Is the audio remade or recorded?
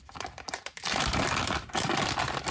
recorded